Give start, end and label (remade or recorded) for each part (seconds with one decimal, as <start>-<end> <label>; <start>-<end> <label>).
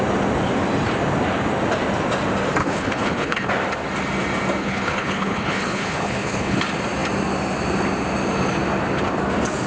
0.0-2.6 recorded; 2.6-3.5 remade; 3.5-4.6 recorded; 4.6-6.6 remade; 6.6-9.7 recorded